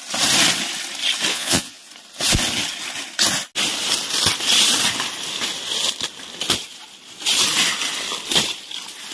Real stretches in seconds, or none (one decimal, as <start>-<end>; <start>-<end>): 0.0-1.3; 1.9-9.1